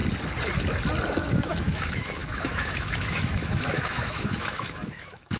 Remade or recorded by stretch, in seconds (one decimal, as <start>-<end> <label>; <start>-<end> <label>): 0.0-1.3 recorded; 1.3-5.4 remade